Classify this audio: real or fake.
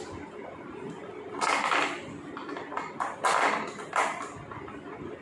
real